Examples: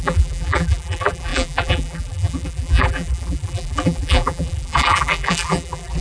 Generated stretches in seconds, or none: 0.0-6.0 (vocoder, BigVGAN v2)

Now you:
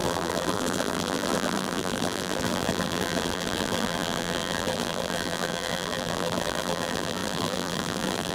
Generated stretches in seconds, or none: 0.0-8.3 (vocoder, BigVGAN v2)

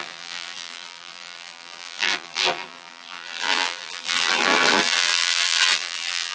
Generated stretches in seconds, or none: 0.0-6.3 (vocoder, BigVGAN v2)

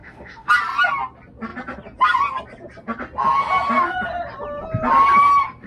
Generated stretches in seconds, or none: 0.0-0.5 (autoencoder, DAC-VAE)

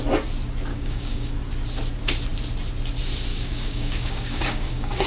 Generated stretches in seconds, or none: 0.7-1.3 (codec, DAC); 3.3-5.1

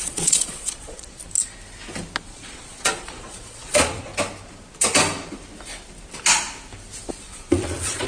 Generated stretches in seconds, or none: 0.0-1.2 (vocoder, Vocos); 2.2-4.1; 7.1-8.1